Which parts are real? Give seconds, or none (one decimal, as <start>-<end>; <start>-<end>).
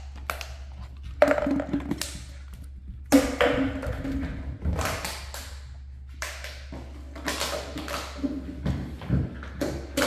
0.0-10.1